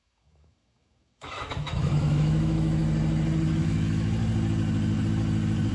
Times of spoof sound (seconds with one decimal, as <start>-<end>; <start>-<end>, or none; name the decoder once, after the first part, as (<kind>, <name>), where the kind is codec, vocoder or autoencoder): 0.0-2.8 (autoencoder, DAC-VAE); 3.6-4.2